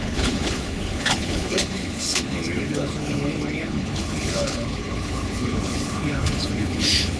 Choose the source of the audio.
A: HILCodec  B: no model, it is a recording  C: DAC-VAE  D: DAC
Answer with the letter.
A